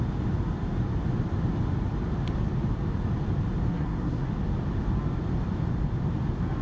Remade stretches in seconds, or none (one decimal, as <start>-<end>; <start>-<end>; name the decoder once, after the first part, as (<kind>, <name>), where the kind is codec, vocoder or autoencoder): 3.7-4.3 (codec, SNAC)